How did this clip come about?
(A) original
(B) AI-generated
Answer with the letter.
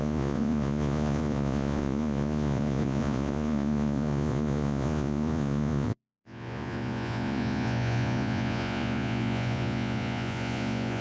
B